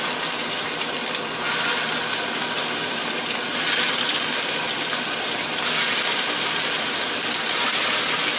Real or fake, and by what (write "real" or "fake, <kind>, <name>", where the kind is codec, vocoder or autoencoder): real